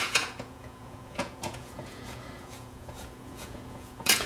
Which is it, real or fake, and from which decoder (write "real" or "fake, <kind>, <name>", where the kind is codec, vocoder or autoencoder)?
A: fake, vocoder, Vocos